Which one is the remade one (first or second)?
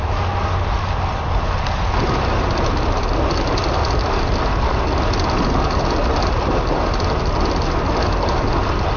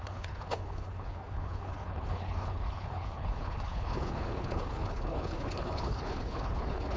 second